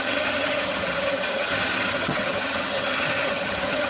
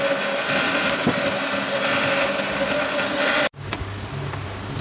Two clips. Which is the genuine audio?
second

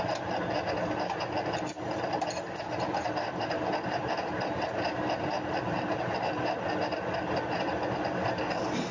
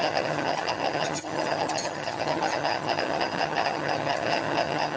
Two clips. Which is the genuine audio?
first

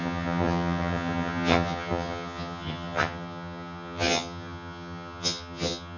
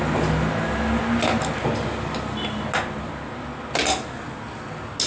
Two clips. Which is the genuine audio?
second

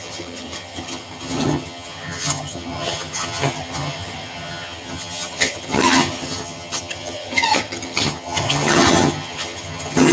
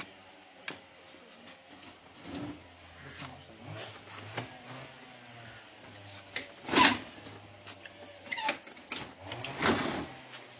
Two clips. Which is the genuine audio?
second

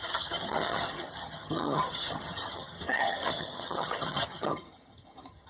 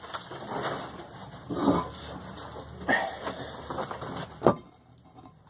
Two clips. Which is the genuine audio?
second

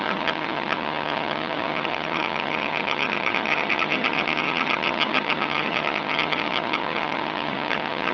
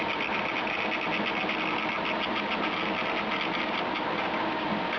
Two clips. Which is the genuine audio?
second